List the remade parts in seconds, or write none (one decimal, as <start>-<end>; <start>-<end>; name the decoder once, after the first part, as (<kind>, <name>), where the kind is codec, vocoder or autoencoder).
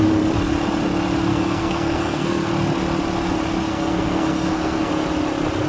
1.3-2.5 (codec, SNAC); 3.7-4.9